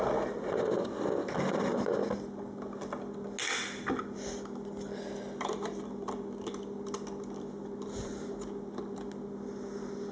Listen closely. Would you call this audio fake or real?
real